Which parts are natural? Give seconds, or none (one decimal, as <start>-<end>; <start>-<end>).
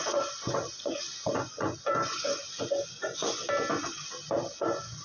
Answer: 3.4-4.5